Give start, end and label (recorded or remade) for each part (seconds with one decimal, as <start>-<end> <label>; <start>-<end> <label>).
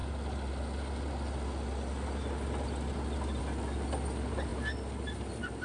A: 0.0-5.6 recorded